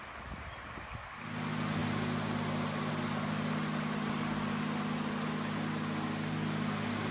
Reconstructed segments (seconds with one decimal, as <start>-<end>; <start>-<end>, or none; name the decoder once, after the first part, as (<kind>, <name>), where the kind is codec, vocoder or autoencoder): none